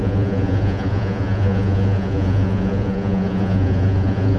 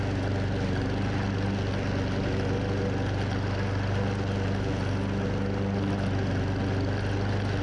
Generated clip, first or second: first